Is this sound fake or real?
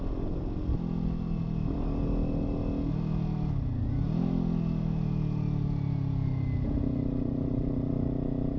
real